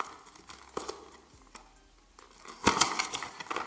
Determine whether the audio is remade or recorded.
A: recorded